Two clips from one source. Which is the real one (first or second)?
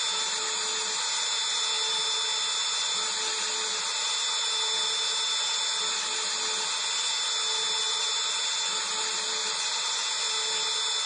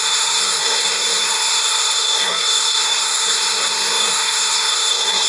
first